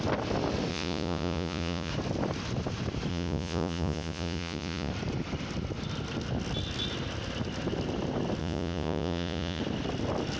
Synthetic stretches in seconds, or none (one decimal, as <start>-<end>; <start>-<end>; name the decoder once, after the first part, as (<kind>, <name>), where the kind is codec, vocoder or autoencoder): 0.7-1.9 (vocoder, Vocos); 3.1-4.9; 8.4-9.6